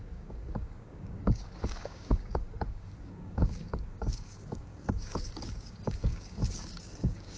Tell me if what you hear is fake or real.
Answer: fake